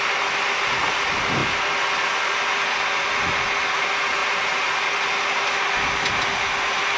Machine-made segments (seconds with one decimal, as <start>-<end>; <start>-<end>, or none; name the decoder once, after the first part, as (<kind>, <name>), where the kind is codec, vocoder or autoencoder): 4.2-4.8 (vocoder, BigVGAN v2)